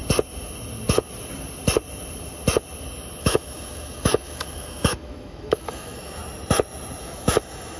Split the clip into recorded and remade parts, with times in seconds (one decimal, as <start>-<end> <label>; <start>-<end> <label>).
0.0-3.2 recorded; 3.2-6.2 remade; 6.2-7.0 recorded; 7.0-7.8 remade

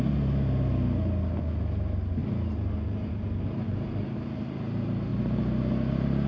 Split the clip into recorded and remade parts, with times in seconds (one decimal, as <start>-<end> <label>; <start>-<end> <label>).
0.0-6.3 recorded

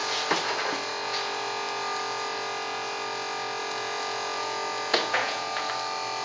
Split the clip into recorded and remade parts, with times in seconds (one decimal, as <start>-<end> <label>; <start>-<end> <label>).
0.0-3.6 recorded; 3.6-5.7 remade; 5.7-6.2 recorded

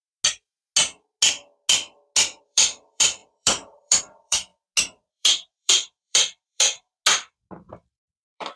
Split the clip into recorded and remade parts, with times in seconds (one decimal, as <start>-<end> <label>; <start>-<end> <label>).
0.0-2.4 recorded; 2.4-4.5 remade; 4.5-5.1 recorded; 5.1-6.9 remade; 6.9-7.7 recorded; 7.7-8.6 remade